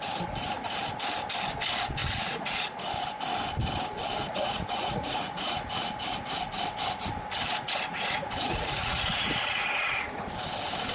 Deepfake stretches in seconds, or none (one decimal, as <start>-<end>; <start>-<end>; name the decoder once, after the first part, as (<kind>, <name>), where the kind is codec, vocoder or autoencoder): 2.0-2.9 (vocoder, Vocos); 4.2-5.7; 7.9-10.3